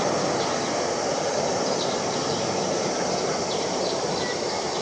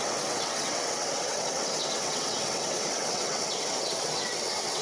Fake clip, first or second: second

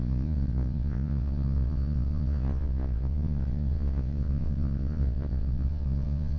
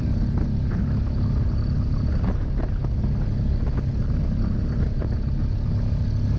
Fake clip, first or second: first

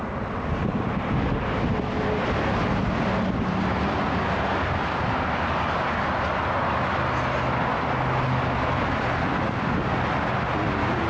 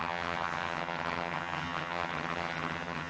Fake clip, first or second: second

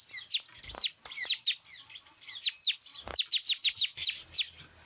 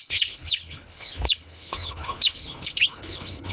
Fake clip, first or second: second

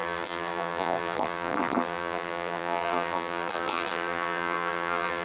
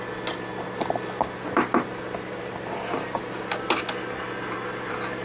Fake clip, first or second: first